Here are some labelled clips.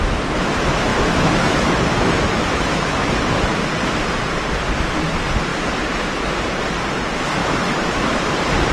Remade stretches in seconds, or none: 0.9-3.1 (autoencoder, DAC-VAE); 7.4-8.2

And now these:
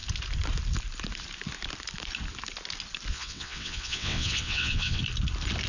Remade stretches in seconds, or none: 3.1-5.0 (vocoder, WaveNeXt)